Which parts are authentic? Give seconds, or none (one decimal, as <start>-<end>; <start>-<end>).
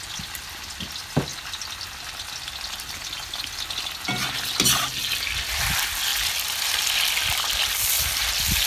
0.0-8.7